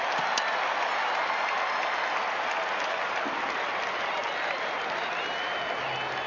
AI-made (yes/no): no